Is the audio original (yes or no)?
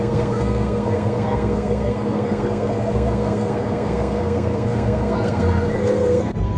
no